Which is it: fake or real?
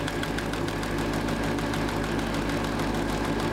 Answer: real